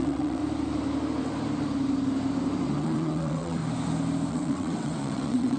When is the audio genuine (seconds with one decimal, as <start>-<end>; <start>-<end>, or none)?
0.4-2.8; 3.6-4.3